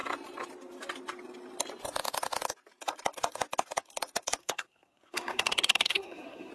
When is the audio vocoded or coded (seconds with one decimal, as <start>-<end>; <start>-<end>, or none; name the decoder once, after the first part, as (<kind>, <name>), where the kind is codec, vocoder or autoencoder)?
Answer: 4.4-6.5 (codec, SNAC)